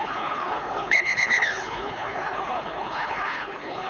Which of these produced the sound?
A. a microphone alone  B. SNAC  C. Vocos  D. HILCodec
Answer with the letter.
D